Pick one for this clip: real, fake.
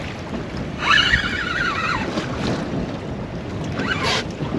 real